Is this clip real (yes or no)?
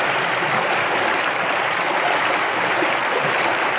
yes